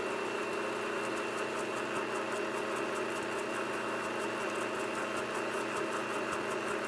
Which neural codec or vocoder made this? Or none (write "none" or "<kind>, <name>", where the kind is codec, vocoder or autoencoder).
none